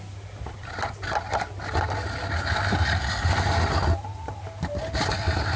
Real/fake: real